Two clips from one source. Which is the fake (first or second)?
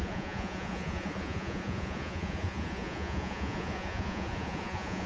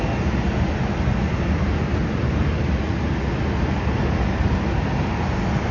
first